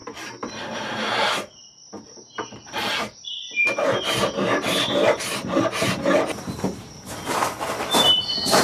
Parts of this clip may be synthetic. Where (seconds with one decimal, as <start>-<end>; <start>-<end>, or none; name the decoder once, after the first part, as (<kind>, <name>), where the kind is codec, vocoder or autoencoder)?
0.0-7.4 (vocoder, BigVGAN v2); 7.9-8.6